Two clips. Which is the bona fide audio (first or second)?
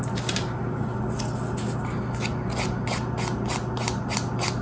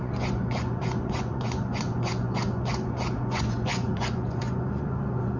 first